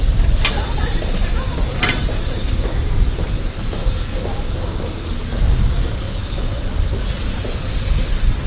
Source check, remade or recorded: recorded